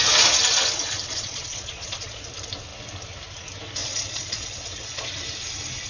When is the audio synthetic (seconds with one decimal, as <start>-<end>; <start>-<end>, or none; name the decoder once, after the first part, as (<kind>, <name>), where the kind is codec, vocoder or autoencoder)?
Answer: 1.0-2.3 (vocoder, Vocos); 3.8-5.1